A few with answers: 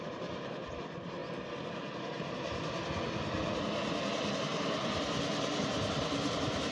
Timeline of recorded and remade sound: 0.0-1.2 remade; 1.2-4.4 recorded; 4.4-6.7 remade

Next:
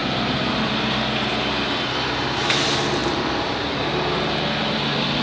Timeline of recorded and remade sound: 0.0-3.0 recorded; 3.0-3.7 remade; 3.7-5.2 recorded

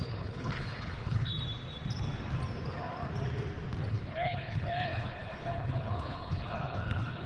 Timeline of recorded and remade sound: 0.0-1.3 remade; 1.3-3.9 recorded; 3.9-7.3 remade

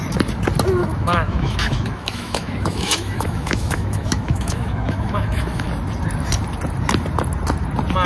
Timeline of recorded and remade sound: 0.0-0.8 recorded; 0.8-5.7 remade; 5.7-8.1 recorded

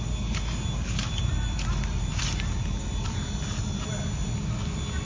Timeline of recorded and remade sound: 0.0-5.0 recorded

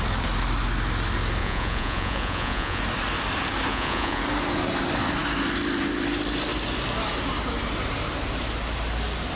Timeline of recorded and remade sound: 0.0-1.4 recorded; 1.4-2.8 remade; 2.8-3.7 recorded; 3.7-4.2 remade; 4.2-9.4 recorded

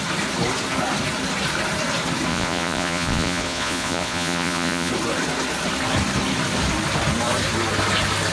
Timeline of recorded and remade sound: 0.0-2.3 recorded; 2.3-4.9 remade; 4.9-8.3 recorded

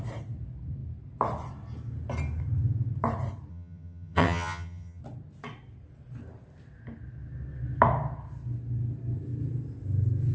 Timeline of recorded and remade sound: 0.0-3.5 recorded; 3.5-5.0 remade; 5.0-10.3 recorded